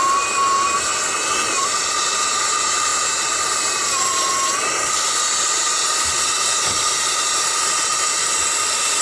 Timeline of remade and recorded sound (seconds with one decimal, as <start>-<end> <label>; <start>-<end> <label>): 0.0-9.0 recorded